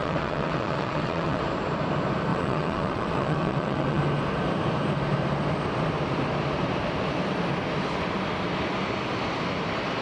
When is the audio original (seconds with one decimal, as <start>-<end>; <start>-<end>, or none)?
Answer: 1.4-2.3; 4.0-10.0